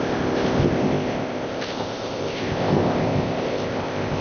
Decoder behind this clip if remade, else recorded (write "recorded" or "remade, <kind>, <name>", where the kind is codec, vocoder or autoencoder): remade, codec, ZipCodec